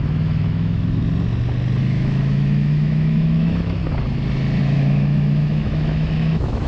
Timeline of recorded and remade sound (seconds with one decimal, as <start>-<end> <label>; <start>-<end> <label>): 0.0-1.0 remade; 1.0-1.8 recorded; 1.8-3.8 remade; 3.8-4.6 recorded; 4.6-6.7 remade